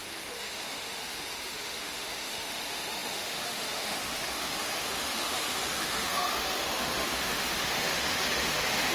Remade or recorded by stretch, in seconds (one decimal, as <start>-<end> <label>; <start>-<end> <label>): 0.0-8.9 remade